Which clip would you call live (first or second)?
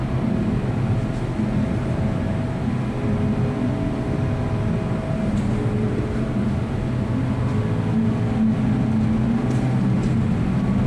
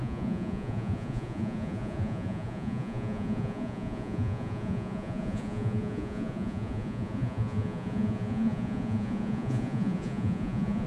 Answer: first